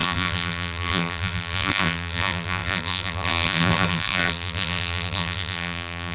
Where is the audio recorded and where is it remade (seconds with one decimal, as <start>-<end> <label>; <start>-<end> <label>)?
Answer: 0.0-6.1 remade